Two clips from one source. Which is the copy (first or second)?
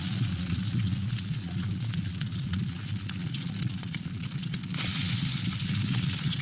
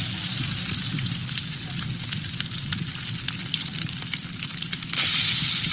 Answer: first